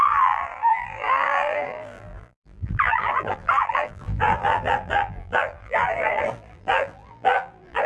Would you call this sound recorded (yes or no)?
no